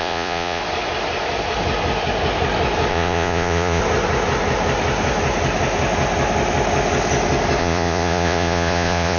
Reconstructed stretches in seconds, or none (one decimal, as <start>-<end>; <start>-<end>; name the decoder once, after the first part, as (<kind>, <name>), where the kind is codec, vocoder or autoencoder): 0.0-0.6 (vocoder, Vocos); 2.9-3.8; 7.6-9.2